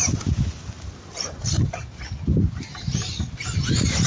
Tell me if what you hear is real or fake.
real